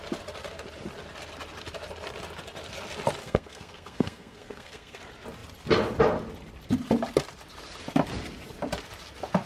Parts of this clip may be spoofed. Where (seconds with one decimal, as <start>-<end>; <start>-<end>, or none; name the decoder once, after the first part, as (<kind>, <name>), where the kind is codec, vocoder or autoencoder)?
3.2-5.0 (codec, SNAC)